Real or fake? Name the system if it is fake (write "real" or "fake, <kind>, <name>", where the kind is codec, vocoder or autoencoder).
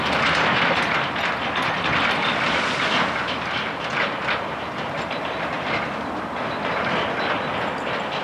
real